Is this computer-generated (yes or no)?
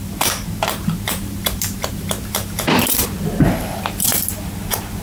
yes